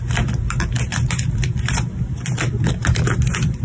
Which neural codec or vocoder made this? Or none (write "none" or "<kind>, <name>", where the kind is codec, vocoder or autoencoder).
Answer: vocoder, BigVGAN v2